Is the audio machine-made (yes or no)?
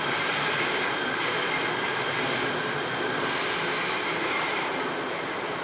no